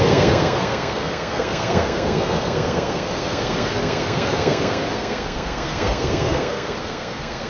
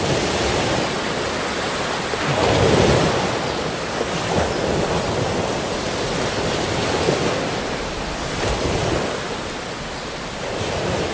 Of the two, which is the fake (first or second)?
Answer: first